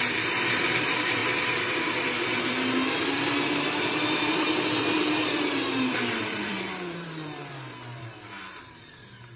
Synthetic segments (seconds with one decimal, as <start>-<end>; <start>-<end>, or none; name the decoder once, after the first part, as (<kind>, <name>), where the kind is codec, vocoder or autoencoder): 0.0-9.4 (vocoder, BigVGAN v2)